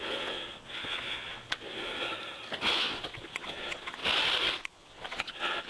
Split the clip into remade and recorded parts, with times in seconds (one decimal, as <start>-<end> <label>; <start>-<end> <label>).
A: 0.0-2.1 remade; 2.1-2.7 recorded; 2.7-4.0 remade; 4.0-4.6 recorded; 4.6-5.7 remade